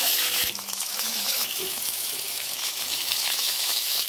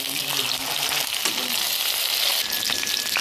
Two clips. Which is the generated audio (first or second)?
first